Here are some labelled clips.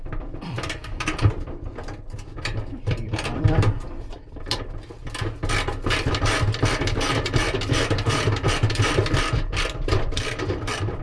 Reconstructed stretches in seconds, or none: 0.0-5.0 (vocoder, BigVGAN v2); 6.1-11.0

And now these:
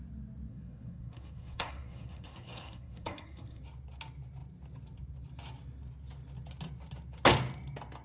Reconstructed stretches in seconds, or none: 0.5-3.6 (codec, SNAC)

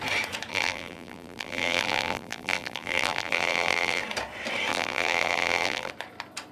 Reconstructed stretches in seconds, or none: 0.5-4.0 (vocoder, BigVGAN v2); 4.7-5.9